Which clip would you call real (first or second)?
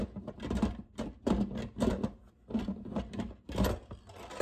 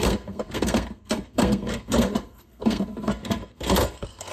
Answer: first